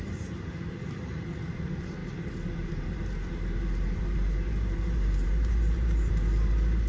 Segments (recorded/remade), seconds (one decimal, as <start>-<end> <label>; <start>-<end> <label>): 0.0-6.9 remade